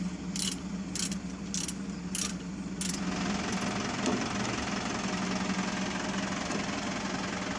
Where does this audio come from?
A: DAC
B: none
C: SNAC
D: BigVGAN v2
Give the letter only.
B